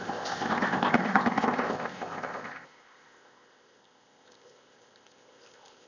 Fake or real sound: fake